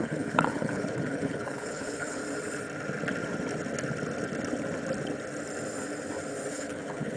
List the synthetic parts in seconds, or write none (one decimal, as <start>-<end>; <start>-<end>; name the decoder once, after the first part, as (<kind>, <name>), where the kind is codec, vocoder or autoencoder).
0.0-2.2 (codec, HILCodec); 6.5-7.2